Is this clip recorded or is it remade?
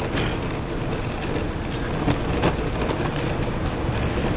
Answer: recorded